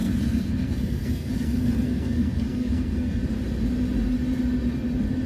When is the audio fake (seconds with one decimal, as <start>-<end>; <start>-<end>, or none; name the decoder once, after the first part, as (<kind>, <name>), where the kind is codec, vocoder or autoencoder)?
0.0-3.2 (codec, SNAC)